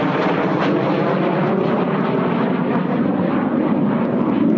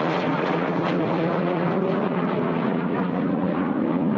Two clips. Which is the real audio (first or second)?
first